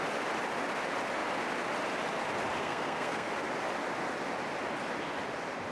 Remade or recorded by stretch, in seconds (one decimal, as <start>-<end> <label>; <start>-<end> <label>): 0.0-2.6 recorded; 2.6-3.3 remade; 3.3-5.7 recorded

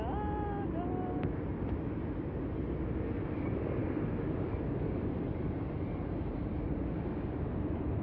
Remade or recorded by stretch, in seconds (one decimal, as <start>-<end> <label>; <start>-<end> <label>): 0.0-8.0 recorded